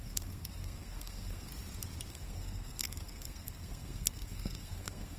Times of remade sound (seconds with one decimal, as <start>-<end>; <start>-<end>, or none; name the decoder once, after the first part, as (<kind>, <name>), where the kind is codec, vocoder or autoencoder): 0.0-1.5 (codec, SNAC); 2.1-5.2